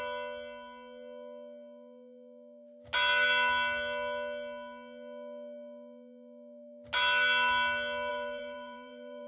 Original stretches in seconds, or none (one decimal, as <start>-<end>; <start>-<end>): 0.0-8.1